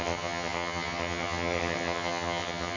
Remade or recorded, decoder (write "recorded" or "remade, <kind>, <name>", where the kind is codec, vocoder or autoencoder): remade, vocoder, HiFi-GAN